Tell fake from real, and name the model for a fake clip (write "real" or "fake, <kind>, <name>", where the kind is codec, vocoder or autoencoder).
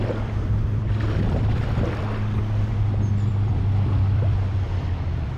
fake, vocoder, BigVGAN v2